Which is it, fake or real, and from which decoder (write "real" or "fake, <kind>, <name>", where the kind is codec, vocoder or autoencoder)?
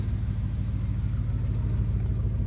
real